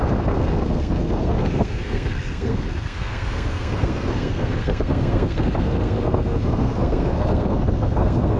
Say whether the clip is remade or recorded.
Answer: remade